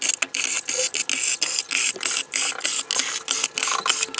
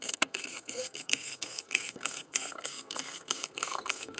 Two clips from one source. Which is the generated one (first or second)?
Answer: second